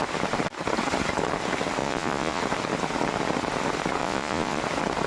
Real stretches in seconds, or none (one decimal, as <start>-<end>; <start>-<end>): 0.0-1.8; 2.4-4.0; 4.6-5.1